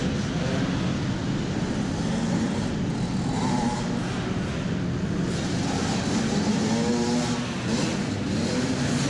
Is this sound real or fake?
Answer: real